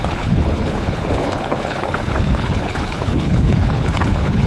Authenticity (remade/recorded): remade